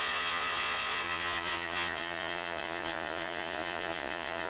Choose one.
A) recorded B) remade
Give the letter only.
B